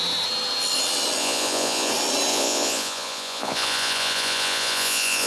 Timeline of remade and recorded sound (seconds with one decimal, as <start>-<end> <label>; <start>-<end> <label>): 0.0-1.2 recorded; 1.2-1.9 remade; 1.9-2.3 recorded; 2.3-5.3 remade